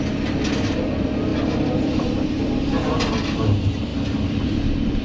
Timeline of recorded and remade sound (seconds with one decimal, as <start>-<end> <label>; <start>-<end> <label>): 0.0-1.3 recorded; 1.3-2.5 remade; 2.5-3.9 recorded; 3.9-5.0 remade